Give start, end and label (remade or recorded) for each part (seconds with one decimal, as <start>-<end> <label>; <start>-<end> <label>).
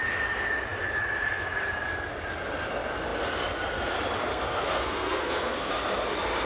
0.0-4.3 recorded; 4.3-5.7 remade; 5.7-6.5 recorded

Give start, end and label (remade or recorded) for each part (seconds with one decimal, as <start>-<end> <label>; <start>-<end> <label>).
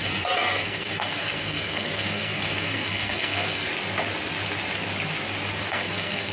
0.0-3.7 remade; 3.7-5.7 recorded; 5.7-6.3 remade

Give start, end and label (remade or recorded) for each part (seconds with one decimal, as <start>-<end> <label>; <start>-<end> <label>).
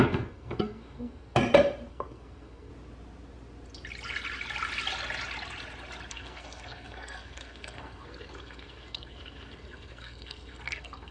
0.0-1.4 remade; 1.4-1.9 recorded; 1.9-2.7 remade; 2.7-6.1 recorded; 6.1-11.1 remade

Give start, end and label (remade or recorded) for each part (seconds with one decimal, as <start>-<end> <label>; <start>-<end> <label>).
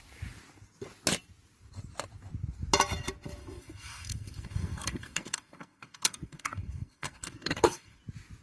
0.0-3.4 recorded; 3.4-8.0 remade; 8.0-8.4 recorded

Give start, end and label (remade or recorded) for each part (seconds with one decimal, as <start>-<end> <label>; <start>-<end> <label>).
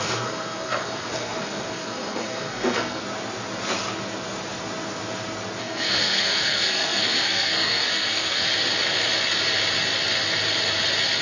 0.0-3.0 remade; 3.0-5.6 recorded; 5.6-8.4 remade; 8.4-11.2 recorded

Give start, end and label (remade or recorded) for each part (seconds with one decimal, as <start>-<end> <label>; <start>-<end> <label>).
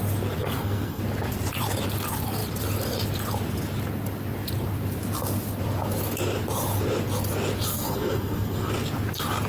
0.0-0.4 recorded; 0.4-1.0 remade; 1.0-7.7 recorded; 7.7-8.7 remade; 8.7-9.5 recorded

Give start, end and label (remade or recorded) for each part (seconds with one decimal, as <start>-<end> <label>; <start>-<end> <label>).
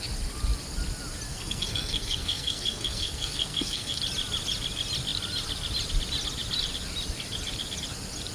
0.0-1.3 recorded; 1.3-4.0 remade; 4.0-8.3 recorded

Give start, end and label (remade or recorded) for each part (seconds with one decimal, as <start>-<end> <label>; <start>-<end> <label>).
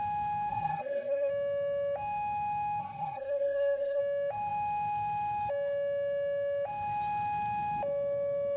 0.0-0.5 recorded; 0.5-1.3 remade; 1.3-2.8 recorded; 2.8-4.0 remade; 4.0-8.6 recorded